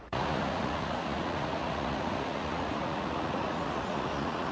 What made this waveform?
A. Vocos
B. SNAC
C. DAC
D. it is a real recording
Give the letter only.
A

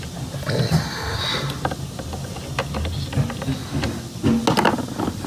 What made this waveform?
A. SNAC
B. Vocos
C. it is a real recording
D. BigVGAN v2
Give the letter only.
C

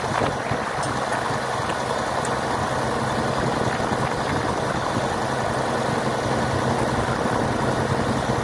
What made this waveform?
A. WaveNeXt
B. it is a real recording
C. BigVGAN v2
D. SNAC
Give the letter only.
B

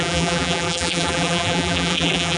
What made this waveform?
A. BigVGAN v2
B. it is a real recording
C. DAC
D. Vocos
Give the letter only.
A